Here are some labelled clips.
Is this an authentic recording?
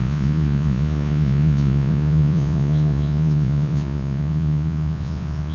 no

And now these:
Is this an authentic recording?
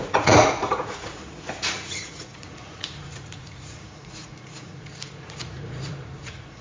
no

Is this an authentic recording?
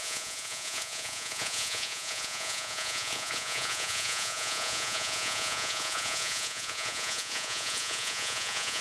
no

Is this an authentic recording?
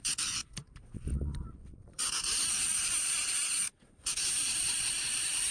no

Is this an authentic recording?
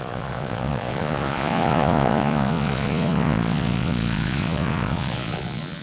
no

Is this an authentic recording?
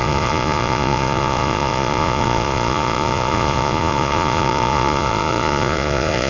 no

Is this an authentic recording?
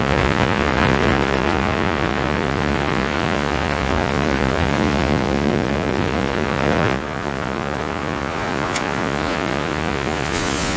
no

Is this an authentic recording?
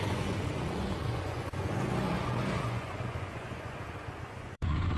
no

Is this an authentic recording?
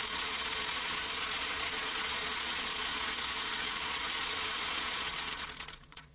no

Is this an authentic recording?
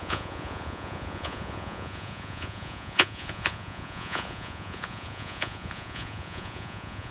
no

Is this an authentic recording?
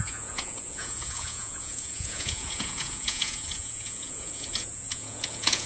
no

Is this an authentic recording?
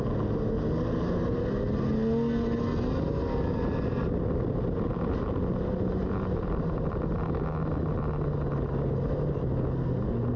yes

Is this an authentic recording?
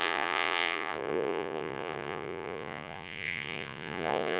no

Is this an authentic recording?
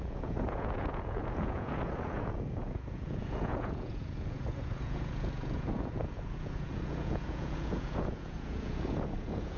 no